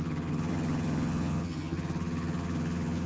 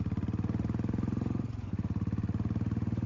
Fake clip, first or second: first